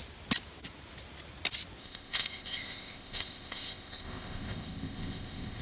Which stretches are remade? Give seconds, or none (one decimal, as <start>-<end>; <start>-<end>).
1.8-5.6